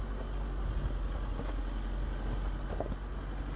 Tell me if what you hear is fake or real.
real